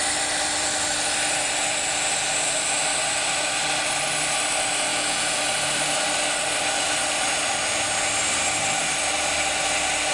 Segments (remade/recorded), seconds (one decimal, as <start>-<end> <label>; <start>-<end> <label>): 0.0-4.9 recorded; 4.9-5.4 remade; 5.4-10.1 recorded